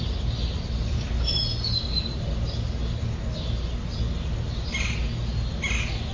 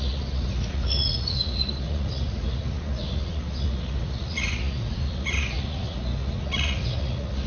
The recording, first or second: first